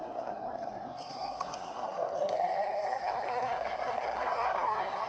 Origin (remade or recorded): remade